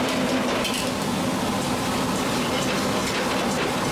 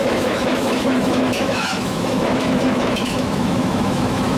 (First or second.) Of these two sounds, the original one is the first